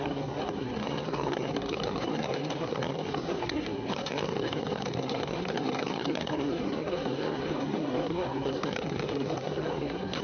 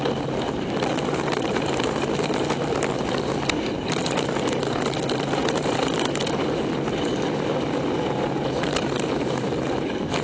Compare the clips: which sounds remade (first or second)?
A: first